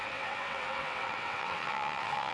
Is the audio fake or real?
fake